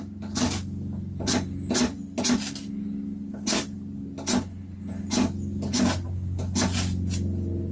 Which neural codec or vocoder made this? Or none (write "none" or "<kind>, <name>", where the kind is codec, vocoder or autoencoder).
none